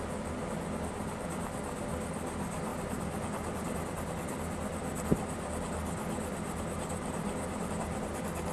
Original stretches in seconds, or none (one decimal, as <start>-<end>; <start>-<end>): 0.0-8.5